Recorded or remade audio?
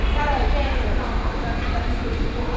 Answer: recorded